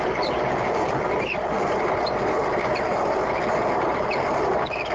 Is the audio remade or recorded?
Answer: remade